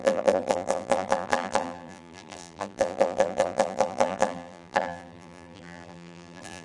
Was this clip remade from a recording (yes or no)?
yes